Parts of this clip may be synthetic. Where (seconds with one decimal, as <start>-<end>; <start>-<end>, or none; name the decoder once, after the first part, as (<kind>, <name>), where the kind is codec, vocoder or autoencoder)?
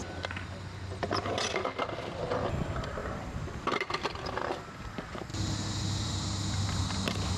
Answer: 3.0-3.9 (vocoder, BigVGAN v2); 5.3-6.1